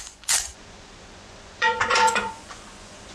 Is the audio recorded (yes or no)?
no